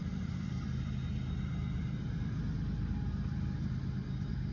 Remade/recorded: recorded